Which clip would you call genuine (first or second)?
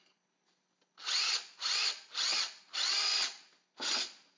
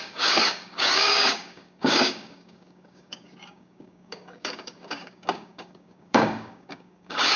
first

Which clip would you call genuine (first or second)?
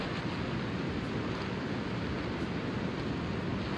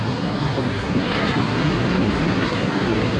first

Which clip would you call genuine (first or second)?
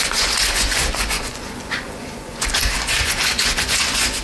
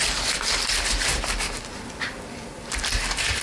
second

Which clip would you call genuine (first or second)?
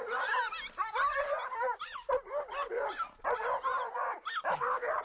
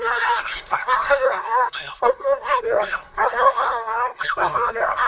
first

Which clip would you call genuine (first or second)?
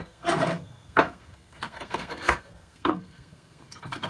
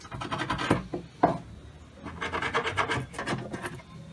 second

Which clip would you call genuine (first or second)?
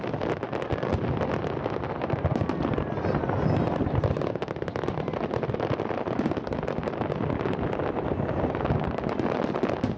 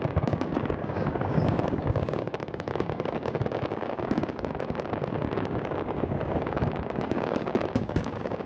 first